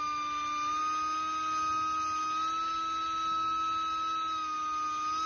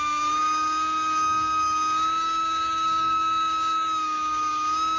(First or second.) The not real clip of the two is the second